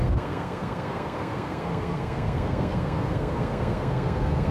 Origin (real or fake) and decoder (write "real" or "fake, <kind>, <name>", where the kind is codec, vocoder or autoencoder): fake, codec, SNAC